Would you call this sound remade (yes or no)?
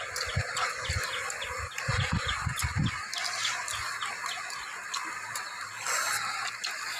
no